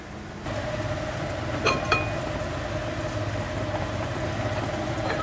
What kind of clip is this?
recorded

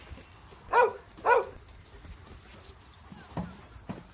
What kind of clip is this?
recorded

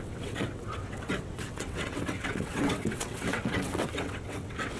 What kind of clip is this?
remade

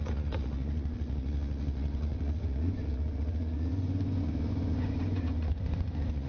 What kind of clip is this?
remade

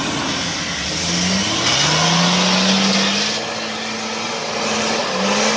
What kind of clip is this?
recorded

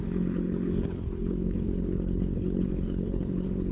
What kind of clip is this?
remade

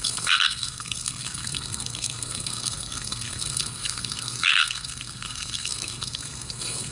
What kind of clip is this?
remade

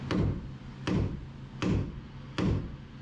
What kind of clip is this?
recorded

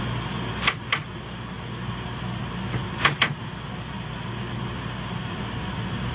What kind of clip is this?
recorded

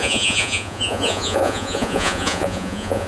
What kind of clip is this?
remade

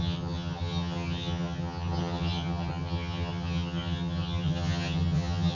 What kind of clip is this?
remade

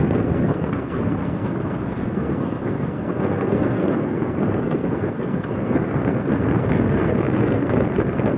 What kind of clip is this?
remade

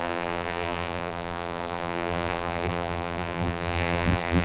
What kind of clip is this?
remade